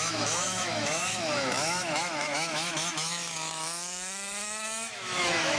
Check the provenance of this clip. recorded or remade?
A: remade